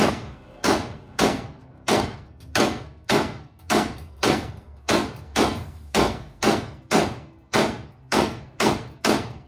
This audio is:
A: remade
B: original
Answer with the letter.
A